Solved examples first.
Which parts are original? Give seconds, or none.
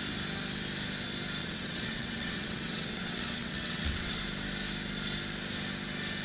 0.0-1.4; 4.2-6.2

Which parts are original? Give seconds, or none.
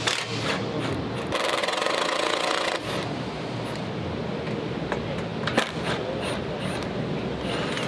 0.0-1.6; 2.8-7.9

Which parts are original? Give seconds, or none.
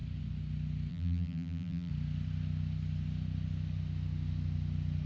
0.0-0.9; 1.9-5.1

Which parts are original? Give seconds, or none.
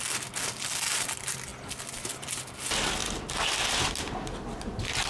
0.0-5.1